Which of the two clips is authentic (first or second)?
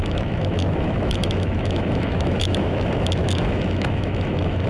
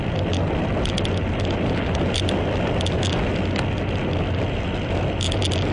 second